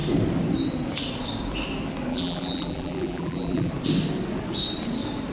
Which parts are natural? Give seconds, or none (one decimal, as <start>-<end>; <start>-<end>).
0.0-2.1; 3.7-5.3